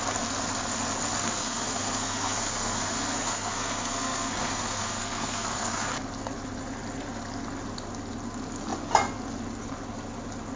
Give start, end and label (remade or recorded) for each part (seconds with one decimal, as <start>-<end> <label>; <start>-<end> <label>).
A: 0.0-1.2 recorded; 1.2-5.9 remade; 5.9-10.6 recorded